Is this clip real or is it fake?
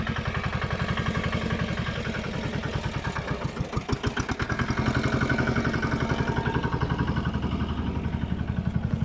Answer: real